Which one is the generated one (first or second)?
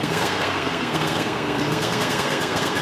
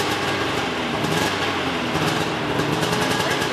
first